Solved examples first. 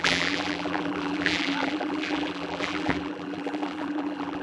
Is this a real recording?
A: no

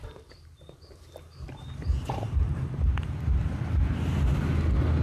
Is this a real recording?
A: yes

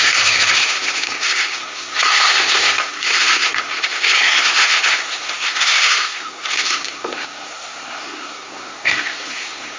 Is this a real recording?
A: no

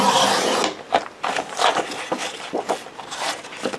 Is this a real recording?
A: yes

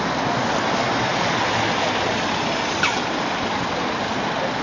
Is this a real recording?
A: yes